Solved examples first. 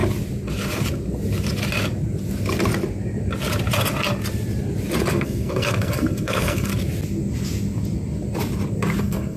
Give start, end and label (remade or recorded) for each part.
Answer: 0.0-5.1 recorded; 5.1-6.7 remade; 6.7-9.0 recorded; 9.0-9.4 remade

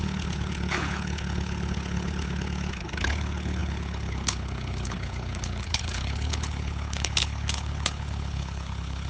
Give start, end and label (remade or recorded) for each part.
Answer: 0.0-9.1 remade

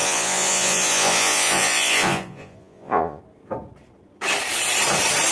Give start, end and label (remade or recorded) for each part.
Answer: 0.0-3.2 remade; 3.2-5.3 recorded

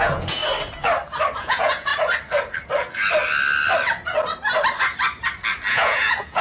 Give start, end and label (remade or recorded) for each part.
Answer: 0.0-0.4 remade; 0.4-1.4 recorded; 1.4-1.9 remade; 1.9-5.7 recorded; 5.7-6.4 remade

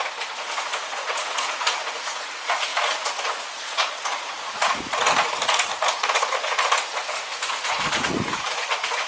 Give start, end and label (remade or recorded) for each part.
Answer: 0.0-9.1 remade

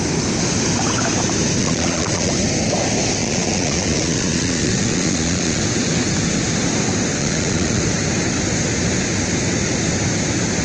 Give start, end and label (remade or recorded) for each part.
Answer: 0.0-1.6 recorded; 1.6-2.3 remade; 2.3-3.2 recorded; 3.2-5.6 remade; 5.6-7.2 recorded; 7.2-7.8 remade; 7.8-10.6 recorded

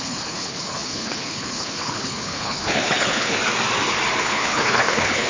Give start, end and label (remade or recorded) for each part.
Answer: 0.0-3.4 remade; 3.4-4.2 recorded; 4.2-5.3 remade

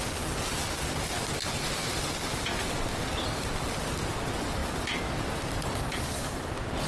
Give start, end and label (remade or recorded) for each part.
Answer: 0.0-6.0 recorded; 6.0-6.5 remade; 6.5-6.9 recorded